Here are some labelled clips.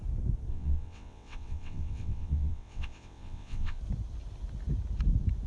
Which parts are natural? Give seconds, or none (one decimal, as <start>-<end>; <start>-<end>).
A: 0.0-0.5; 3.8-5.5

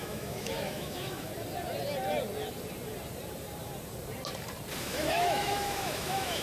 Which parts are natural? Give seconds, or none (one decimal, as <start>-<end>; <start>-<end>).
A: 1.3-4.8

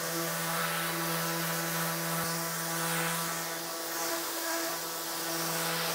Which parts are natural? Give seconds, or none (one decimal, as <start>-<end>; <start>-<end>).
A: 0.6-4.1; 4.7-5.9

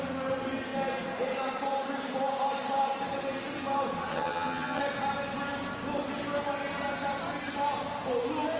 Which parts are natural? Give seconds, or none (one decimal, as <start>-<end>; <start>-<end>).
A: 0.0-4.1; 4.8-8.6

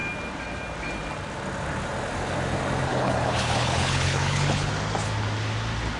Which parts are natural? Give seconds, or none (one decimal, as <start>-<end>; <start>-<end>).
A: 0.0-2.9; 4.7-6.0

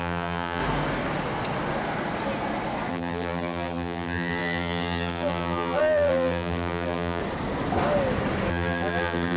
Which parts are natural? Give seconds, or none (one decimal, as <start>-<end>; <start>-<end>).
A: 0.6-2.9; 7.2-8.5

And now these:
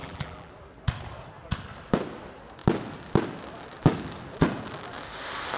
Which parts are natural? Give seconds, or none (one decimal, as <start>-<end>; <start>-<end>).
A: 0.5-5.6